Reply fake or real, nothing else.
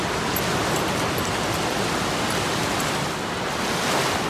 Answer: real